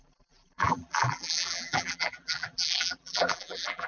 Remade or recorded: remade